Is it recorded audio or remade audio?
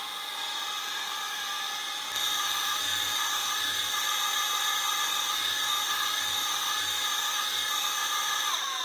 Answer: recorded